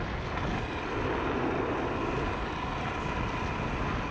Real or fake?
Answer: real